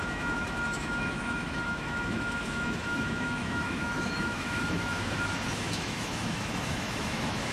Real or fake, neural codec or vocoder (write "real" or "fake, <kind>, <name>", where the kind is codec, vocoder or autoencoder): fake, autoencoder, DAC-VAE